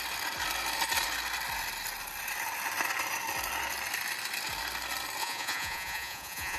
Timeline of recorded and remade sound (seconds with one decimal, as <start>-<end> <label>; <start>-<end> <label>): 0.0-5.2 recorded; 5.2-6.6 remade